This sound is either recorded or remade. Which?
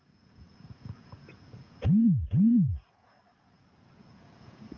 remade